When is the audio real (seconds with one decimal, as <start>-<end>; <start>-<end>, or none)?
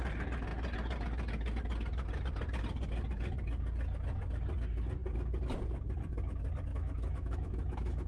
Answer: 0.0-6.7